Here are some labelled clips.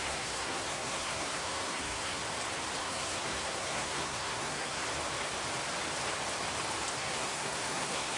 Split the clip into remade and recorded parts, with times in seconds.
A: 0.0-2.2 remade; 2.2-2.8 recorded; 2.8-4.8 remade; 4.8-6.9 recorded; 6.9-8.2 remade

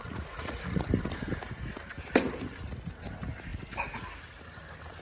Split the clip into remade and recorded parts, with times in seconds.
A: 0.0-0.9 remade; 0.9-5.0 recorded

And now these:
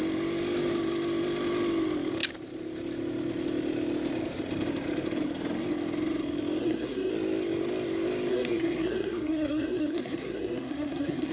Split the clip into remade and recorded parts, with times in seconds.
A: 0.0-6.6 recorded; 6.6-7.1 remade; 7.1-8.3 recorded; 8.3-11.3 remade

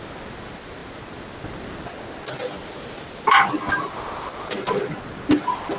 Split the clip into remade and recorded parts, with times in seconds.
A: 0.0-5.8 recorded

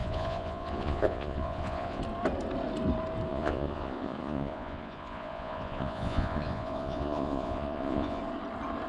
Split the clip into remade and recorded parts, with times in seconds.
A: 0.0-2.0 remade; 2.0-3.3 recorded; 3.3-8.2 remade; 8.2-8.9 recorded

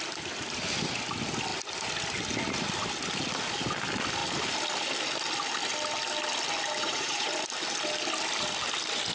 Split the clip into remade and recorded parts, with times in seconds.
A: 0.0-6.8 recorded; 6.8-7.3 remade; 7.3-9.1 recorded